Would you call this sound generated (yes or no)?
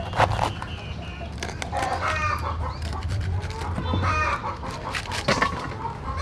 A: no